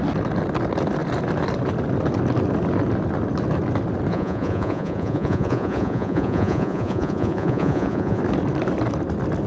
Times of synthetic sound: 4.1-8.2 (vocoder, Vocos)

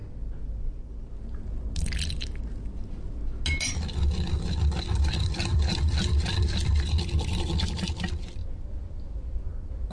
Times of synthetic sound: none